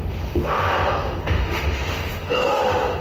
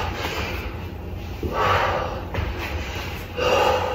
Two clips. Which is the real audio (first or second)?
second